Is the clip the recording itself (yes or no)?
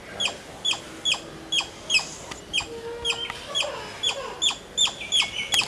yes